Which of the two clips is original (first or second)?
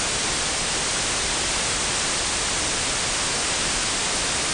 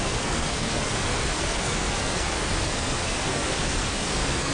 first